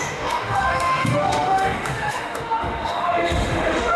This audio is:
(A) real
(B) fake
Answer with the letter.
B